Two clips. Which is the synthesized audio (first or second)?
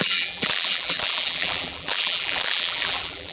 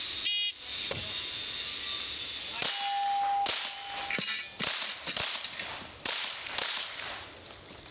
first